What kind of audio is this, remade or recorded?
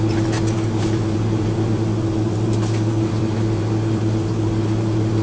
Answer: recorded